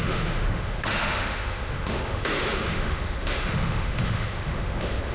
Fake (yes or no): yes